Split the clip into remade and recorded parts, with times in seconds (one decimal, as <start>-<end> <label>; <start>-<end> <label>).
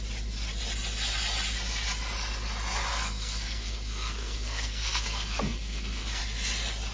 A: 0.0-2.9 recorded; 2.9-6.2 remade; 6.2-6.9 recorded